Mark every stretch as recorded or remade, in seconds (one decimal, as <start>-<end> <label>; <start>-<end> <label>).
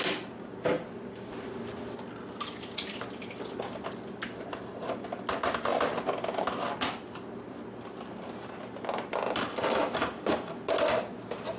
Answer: 0.0-11.6 recorded